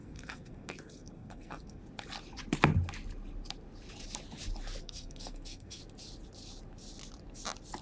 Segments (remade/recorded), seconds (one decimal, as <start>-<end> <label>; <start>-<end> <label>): 0.0-1.8 remade; 1.8-4.8 recorded; 4.8-5.8 remade; 5.8-7.8 recorded